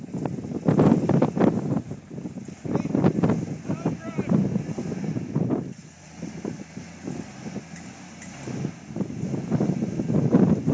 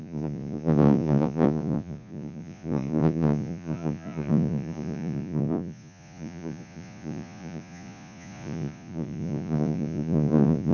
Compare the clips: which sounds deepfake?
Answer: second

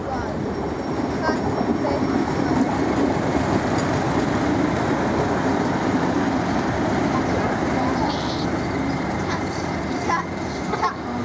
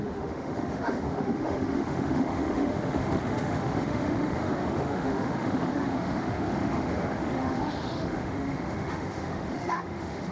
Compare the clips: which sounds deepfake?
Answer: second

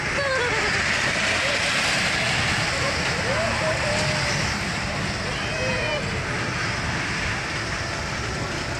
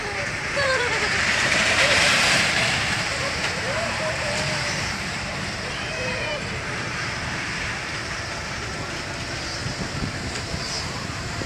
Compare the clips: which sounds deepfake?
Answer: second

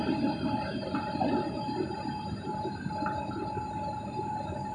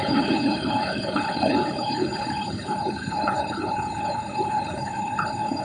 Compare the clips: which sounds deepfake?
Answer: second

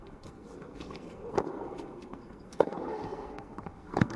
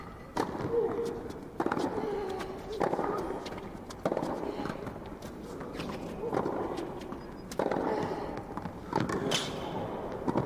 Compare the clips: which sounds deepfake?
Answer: first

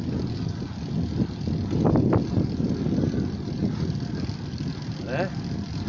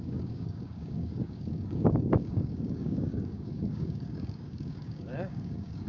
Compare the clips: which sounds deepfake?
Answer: second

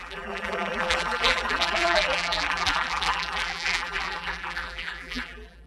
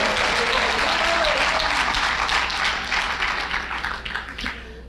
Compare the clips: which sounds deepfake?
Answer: first